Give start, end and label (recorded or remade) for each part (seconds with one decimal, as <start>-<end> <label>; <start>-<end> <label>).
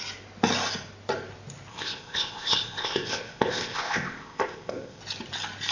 0.0-1.7 recorded; 1.7-5.0 remade; 5.0-5.7 recorded